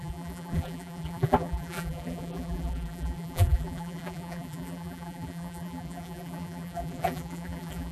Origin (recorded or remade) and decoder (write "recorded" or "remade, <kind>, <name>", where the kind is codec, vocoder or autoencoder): remade, vocoder, BigVGAN v2